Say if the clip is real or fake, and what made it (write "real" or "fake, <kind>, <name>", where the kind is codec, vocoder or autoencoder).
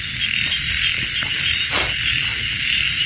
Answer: real